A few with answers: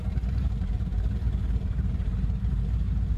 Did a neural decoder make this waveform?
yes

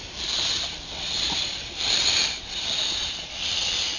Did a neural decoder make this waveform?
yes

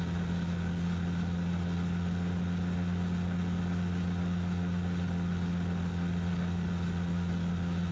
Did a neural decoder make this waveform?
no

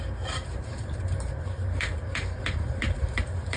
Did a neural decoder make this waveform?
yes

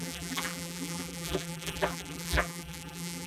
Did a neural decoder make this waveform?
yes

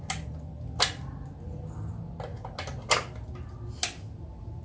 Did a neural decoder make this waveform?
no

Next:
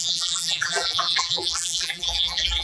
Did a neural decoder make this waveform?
yes